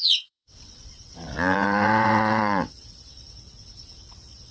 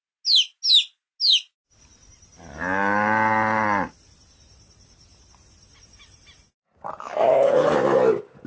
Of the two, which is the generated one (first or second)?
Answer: first